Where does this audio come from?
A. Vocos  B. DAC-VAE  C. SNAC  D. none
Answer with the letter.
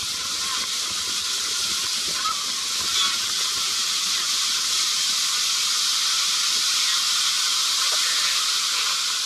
D